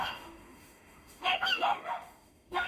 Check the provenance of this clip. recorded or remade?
remade